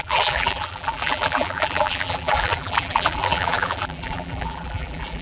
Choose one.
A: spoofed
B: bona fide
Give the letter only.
A